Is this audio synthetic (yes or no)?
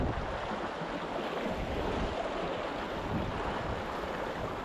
no